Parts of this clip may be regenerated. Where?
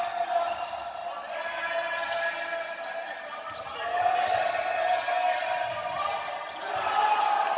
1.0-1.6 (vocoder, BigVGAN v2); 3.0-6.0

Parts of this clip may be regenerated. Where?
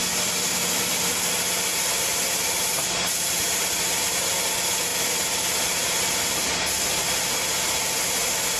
1.7-4.4 (vocoder, BigVGAN v2)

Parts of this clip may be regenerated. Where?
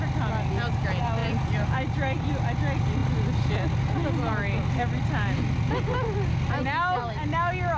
1.2-2.3 (vocoder, BigVGAN v2)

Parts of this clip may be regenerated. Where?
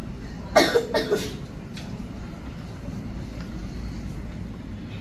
none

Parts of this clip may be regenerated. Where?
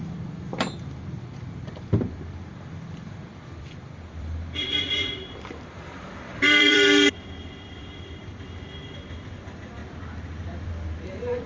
0.0-9.8 (vocoder, BigVGAN v2); 11.1-11.5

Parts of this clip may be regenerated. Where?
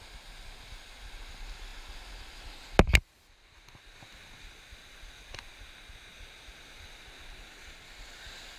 none